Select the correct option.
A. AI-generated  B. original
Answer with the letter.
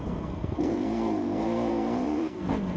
A